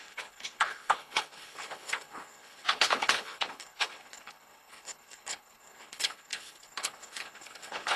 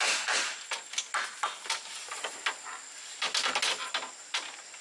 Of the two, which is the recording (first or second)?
second